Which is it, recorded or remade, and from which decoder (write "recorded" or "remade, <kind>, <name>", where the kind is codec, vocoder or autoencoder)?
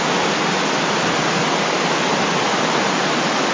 recorded